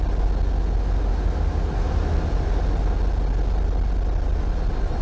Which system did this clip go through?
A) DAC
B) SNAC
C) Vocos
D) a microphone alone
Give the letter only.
D